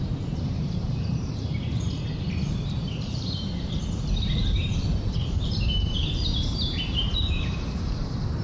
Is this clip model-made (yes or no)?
yes